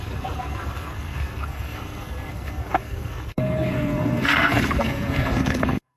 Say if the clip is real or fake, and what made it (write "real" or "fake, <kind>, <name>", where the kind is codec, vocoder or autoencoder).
fake, codec, SNAC